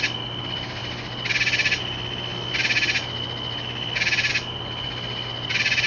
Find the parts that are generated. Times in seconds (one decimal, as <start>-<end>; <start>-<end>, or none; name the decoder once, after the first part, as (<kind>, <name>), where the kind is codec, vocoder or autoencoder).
none